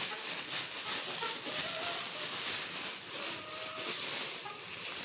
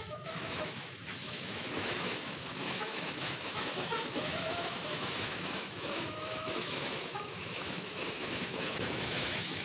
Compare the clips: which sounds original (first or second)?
first